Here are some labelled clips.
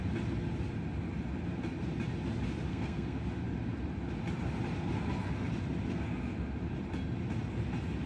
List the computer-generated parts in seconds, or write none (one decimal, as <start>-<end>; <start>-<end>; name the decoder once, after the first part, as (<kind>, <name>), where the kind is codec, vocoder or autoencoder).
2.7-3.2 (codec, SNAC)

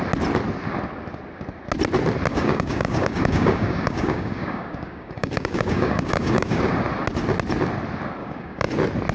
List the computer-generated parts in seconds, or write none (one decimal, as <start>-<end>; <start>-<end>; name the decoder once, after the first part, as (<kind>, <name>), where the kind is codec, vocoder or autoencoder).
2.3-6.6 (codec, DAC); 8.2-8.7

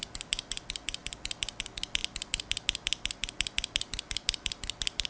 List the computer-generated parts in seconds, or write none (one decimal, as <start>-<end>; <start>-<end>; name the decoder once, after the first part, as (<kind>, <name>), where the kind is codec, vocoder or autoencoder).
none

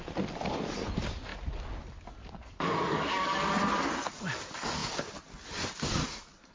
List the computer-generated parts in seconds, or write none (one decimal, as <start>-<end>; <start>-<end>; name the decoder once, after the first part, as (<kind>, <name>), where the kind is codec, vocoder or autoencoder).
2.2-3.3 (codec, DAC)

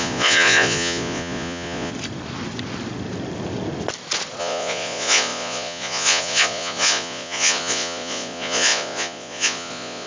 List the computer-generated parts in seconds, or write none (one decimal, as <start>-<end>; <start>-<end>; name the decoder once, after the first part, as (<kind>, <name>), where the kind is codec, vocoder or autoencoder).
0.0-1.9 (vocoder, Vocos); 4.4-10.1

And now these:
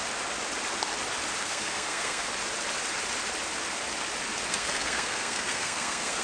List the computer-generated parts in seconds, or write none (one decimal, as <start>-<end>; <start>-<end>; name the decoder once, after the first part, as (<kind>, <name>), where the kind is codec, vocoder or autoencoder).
1.4-2.3 (codec, SNAC); 4.5-6.2